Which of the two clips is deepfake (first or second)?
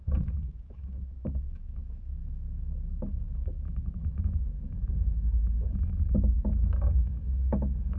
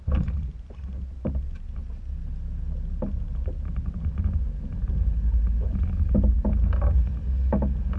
first